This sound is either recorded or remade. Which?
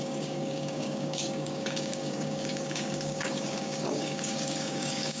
remade